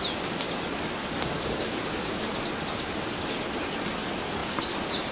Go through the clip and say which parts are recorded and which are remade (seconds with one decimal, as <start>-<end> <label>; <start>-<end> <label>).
0.0-1.0 recorded; 1.0-2.2 remade; 2.2-5.1 recorded